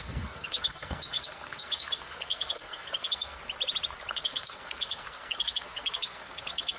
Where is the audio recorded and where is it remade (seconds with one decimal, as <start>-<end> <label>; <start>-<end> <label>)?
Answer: 0.0-3.4 remade; 3.4-4.1 recorded; 4.1-6.8 remade

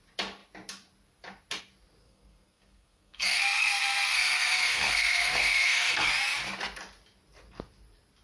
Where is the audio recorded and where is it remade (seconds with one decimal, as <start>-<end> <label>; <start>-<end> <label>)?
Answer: 0.0-2.0 recorded; 2.0-6.1 remade; 6.1-8.2 recorded

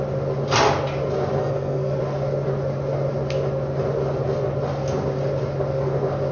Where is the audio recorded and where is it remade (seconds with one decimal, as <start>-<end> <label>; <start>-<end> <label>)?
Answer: 0.0-1.4 recorded; 1.4-2.0 remade; 2.0-6.3 recorded

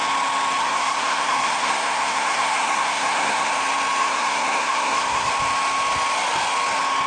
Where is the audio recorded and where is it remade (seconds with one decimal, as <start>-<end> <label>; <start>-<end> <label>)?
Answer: 0.0-0.6 recorded; 0.6-3.5 remade; 3.5-4.0 recorded; 4.0-5.3 remade; 5.3-7.1 recorded

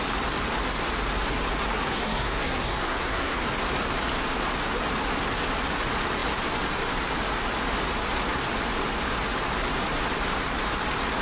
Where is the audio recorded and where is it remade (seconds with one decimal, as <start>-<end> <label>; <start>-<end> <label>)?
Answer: 0.0-1.8 recorded; 1.8-3.4 remade; 3.4-11.2 recorded